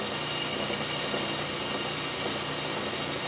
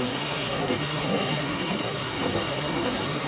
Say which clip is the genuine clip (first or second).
first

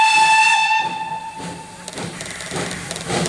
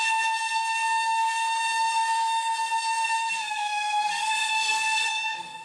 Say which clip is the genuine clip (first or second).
first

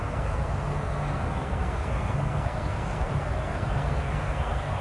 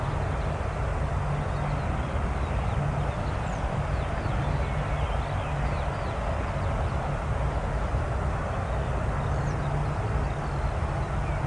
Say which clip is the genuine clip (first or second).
second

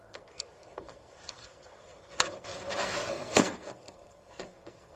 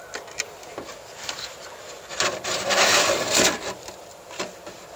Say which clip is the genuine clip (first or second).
second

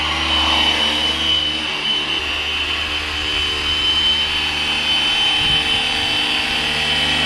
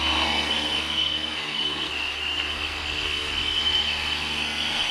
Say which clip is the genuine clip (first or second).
first